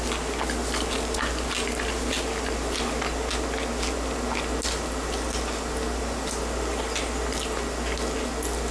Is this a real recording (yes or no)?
yes